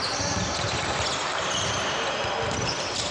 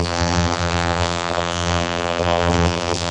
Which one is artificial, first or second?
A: second